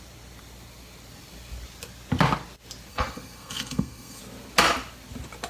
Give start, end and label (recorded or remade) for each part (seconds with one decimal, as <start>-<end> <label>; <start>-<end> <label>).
0.0-2.9 recorded; 2.9-4.2 remade; 4.2-5.5 recorded